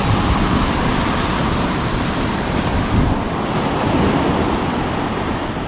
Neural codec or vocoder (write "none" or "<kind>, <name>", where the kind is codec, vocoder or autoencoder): none